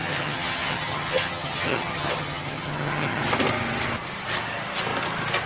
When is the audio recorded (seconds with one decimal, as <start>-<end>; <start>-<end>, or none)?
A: 3.2-5.5